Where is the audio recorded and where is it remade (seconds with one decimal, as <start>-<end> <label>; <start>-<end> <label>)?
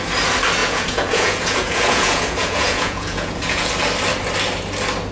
0.0-0.6 recorded; 0.6-3.7 remade; 3.7-5.1 recorded